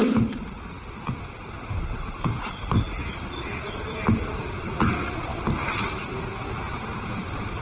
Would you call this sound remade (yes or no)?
no